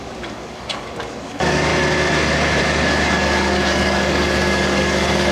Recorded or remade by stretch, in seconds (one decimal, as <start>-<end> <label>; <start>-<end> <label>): 0.0-1.7 remade; 1.7-2.6 recorded; 2.6-5.3 remade